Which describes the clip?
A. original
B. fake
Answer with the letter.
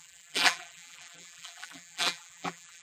B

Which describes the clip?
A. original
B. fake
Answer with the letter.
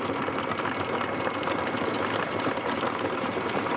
B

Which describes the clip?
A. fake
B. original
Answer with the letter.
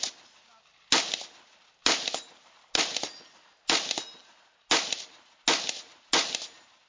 B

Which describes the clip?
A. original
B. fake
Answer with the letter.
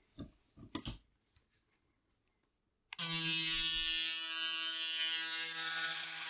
A